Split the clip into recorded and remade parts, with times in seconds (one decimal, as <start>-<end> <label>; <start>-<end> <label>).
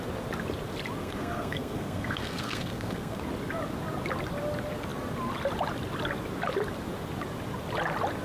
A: 0.0-1.0 recorded; 1.0-3.2 remade; 3.2-8.2 recorded